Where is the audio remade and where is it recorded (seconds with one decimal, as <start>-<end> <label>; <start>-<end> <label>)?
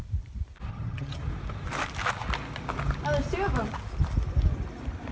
0.0-0.7 recorded; 0.7-1.2 remade; 1.2-5.1 recorded